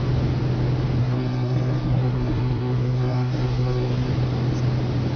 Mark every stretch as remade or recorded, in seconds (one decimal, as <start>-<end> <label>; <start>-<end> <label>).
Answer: 0.0-1.0 recorded; 1.0-4.1 remade; 4.1-5.2 recorded